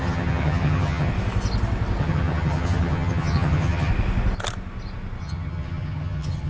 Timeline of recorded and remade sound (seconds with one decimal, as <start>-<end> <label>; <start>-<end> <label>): 0.0-1.1 remade; 1.1-2.0 recorded; 2.0-3.9 remade; 3.9-5.2 recorded; 5.2-6.5 remade